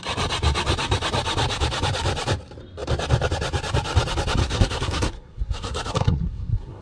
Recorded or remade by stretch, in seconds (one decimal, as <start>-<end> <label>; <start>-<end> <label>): 0.0-4.4 recorded; 4.4-6.8 remade